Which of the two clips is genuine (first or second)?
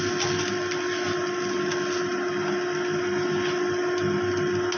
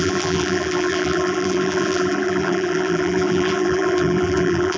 first